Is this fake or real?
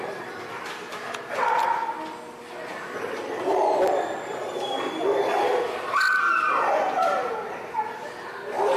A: fake